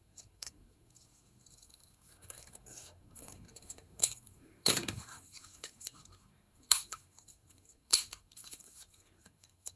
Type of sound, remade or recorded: remade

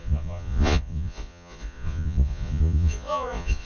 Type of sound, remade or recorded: remade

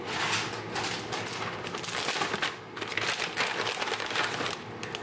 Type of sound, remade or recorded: recorded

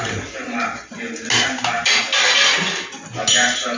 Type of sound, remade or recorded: recorded